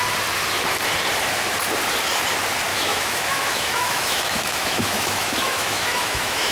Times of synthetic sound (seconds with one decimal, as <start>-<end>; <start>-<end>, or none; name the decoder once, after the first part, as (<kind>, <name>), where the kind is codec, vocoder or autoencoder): 2.7-6.5 (autoencoder, DAC-VAE)